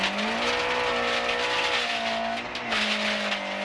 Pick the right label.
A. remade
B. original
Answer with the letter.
B